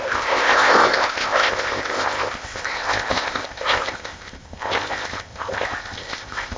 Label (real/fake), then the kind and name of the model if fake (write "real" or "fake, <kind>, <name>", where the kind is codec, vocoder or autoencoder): fake, codec, ZipCodec